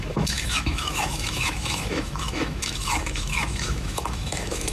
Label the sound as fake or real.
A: fake